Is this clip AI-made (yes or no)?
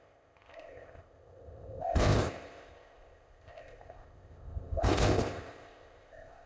yes